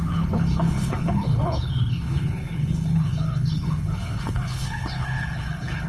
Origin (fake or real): fake